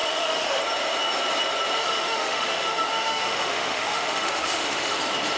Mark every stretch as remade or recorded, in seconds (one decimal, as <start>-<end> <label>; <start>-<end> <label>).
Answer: 0.0-0.6 remade; 0.6-1.8 recorded; 1.8-5.0 remade; 5.0-5.4 recorded